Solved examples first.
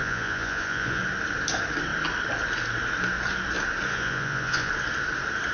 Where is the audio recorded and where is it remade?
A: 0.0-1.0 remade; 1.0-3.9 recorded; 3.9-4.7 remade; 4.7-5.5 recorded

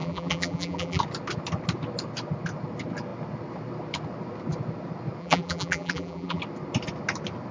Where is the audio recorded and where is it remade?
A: 0.0-1.0 remade; 1.0-5.2 recorded; 5.2-6.4 remade; 6.4-7.5 recorded

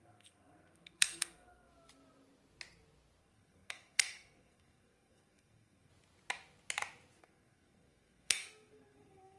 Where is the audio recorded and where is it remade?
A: 0.0-1.7 remade; 1.7-3.2 recorded; 3.2-5.9 remade; 5.9-7.2 recorded; 7.2-9.4 remade

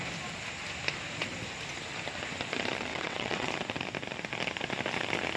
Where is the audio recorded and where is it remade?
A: 0.0-2.9 recorded; 2.9-3.5 remade; 3.5-5.4 recorded

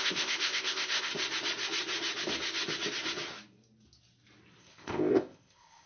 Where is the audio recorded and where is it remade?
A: 0.0-1.1 remade; 1.1-4.6 recorded; 4.6-5.9 remade